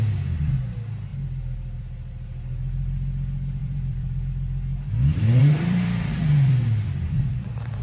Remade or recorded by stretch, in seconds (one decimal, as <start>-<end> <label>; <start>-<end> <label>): 0.0-3.6 recorded; 3.6-4.2 remade; 4.2-4.7 recorded; 4.7-7.8 remade